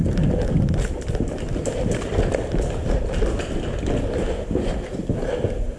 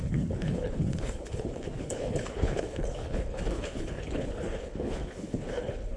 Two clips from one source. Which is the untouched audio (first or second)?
first